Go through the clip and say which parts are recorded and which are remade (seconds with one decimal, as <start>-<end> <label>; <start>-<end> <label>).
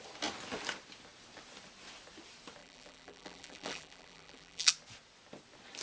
0.0-2.6 recorded; 2.6-4.7 remade; 4.7-5.8 recorded